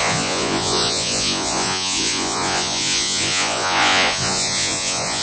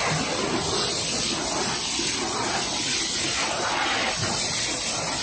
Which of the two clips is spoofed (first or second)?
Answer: first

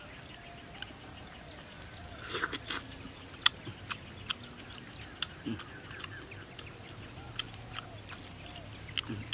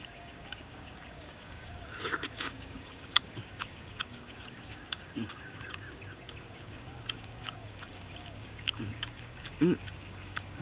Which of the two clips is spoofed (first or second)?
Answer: second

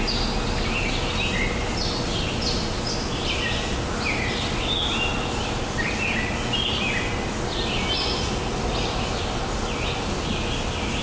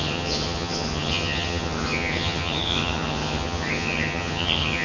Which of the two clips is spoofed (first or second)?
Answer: second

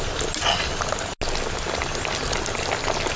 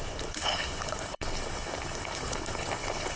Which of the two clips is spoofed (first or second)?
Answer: second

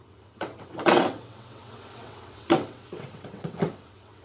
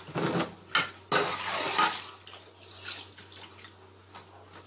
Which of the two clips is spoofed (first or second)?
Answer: first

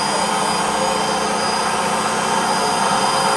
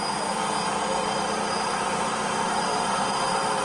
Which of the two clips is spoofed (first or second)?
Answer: second